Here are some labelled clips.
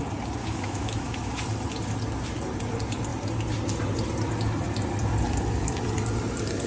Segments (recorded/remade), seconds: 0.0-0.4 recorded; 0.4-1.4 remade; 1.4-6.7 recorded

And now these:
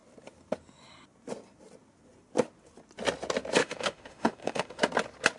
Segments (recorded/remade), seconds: 0.0-3.6 recorded; 3.6-4.8 remade; 4.8-5.4 recorded

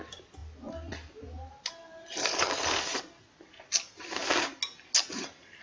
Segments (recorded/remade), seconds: 0.0-5.6 recorded

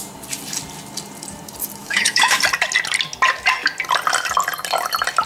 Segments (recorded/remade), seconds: 0.0-1.8 recorded; 1.8-2.4 remade; 2.4-5.3 recorded

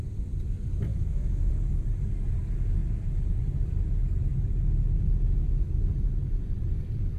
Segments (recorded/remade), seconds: 0.0-0.9 recorded; 0.9-1.5 remade; 1.5-7.2 recorded